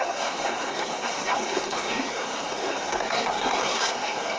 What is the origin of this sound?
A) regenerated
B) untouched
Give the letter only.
A